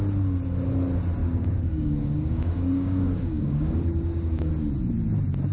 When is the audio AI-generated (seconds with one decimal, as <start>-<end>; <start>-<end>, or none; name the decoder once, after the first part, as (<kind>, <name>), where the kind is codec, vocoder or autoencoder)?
1.2-4.5 (codec, DAC)